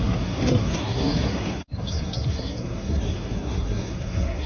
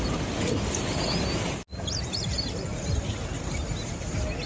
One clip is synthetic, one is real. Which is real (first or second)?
second